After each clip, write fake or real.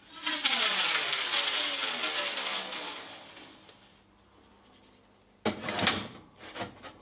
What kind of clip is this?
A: real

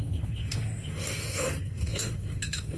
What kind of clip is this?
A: fake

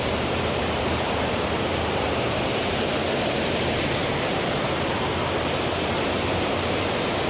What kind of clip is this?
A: fake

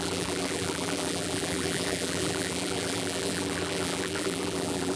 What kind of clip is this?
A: fake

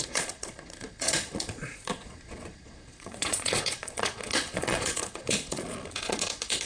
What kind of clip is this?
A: fake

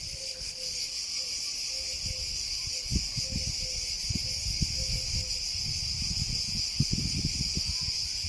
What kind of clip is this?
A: real